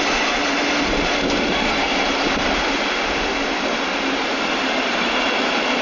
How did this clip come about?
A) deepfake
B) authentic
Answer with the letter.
B